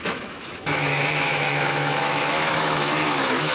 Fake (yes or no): yes